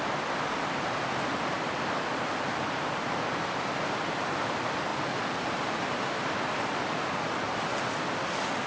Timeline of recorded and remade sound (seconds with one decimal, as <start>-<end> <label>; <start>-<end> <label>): 0.0-8.7 recorded